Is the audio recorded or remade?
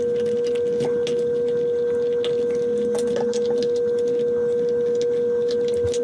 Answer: recorded